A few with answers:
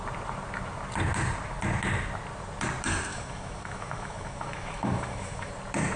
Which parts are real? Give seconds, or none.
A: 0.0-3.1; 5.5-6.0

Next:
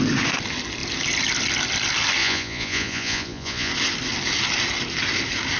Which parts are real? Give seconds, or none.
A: 0.0-2.2; 3.7-5.6

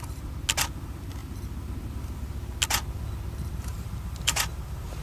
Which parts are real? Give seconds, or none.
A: 0.0-3.7